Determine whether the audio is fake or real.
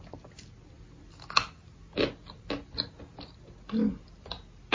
real